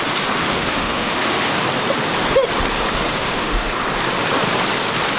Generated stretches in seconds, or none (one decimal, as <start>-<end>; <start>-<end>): 0.4-1.6; 3.2-3.7